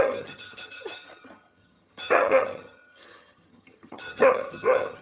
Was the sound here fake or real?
fake